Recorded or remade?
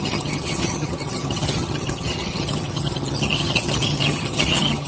remade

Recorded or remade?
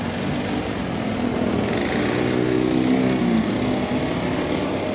recorded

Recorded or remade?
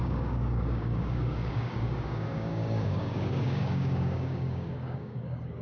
remade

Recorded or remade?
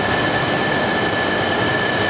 recorded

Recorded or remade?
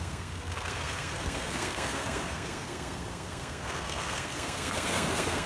remade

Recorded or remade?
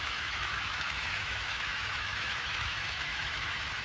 remade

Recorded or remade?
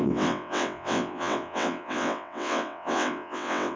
remade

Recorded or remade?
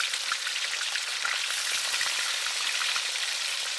recorded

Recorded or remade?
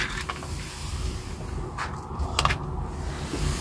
recorded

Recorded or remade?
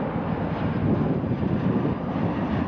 recorded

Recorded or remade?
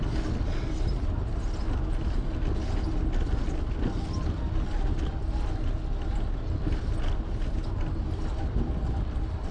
recorded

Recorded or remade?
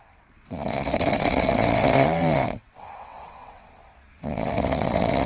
remade